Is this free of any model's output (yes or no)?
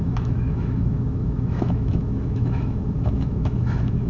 no